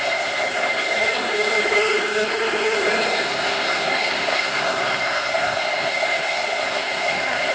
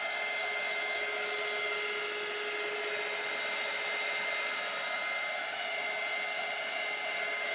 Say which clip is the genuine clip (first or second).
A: second